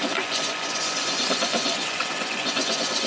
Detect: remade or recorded remade